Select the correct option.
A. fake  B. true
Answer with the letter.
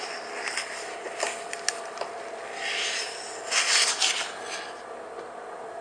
B